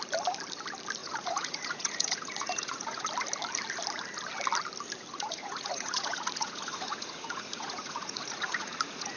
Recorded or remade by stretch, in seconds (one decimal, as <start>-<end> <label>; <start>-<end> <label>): 0.0-1.0 recorded; 1.0-3.1 remade; 3.1-5.1 recorded; 5.1-9.2 remade